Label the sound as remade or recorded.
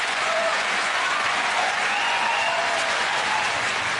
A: remade